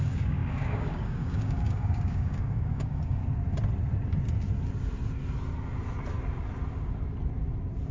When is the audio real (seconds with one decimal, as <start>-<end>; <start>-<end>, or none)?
3.2-7.9